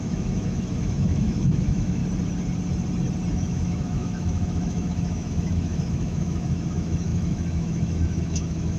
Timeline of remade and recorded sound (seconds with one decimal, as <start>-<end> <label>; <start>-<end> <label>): 0.0-2.0 remade; 2.0-3.3 recorded; 3.3-8.8 remade